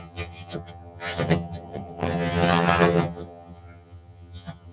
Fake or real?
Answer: fake